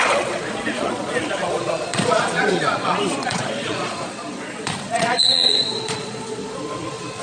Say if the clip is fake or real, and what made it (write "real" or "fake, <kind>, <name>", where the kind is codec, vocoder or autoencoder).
fake, vocoder, Vocos